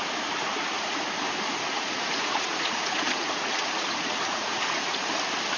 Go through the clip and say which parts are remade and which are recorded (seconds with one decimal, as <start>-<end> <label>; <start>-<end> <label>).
0.0-0.5 recorded; 0.5-1.0 remade; 1.0-1.7 recorded; 1.7-5.1 remade; 5.1-5.6 recorded